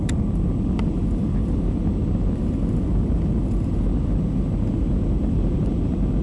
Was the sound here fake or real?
real